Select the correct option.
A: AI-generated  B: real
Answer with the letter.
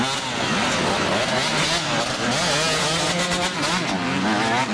B